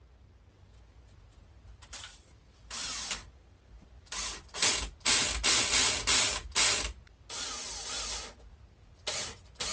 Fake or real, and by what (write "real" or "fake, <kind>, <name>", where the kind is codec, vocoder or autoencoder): real